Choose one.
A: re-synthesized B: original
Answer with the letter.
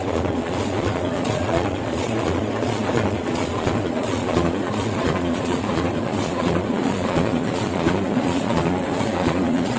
A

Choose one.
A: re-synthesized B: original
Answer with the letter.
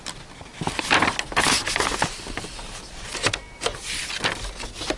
B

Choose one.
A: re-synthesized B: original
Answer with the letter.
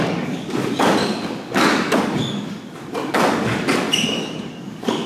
A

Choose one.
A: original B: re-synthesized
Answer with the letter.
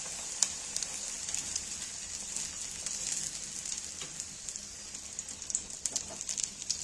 A